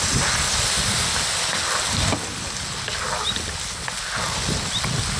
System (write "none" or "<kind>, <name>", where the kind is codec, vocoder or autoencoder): none